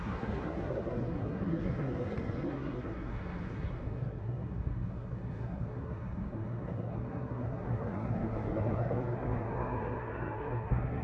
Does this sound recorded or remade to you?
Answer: remade